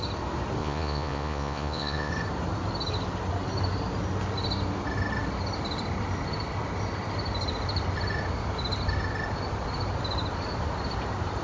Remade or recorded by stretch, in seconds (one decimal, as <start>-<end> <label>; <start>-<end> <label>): 0.0-0.6 recorded; 0.6-2.1 remade; 2.1-11.4 recorded